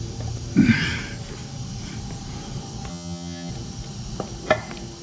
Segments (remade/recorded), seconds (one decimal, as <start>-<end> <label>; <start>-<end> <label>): 0.0-2.9 recorded; 2.9-3.5 remade; 3.5-5.0 recorded